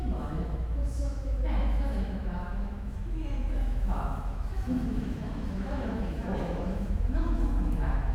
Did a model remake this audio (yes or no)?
yes